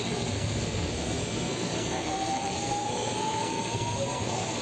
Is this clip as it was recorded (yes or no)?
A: no